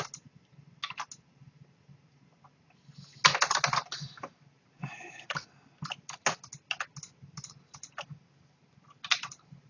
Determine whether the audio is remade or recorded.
recorded